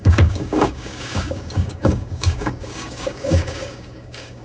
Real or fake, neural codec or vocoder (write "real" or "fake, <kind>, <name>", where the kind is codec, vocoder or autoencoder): fake, codec, DAC